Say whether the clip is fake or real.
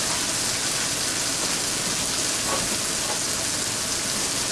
real